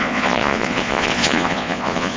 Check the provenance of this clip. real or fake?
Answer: fake